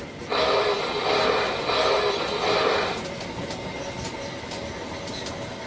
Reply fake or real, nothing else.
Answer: real